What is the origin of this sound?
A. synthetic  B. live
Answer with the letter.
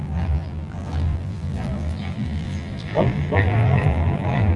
A